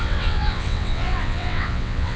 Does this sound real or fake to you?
fake